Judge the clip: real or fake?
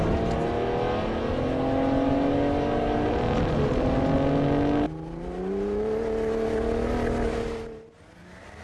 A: real